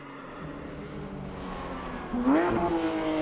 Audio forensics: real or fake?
real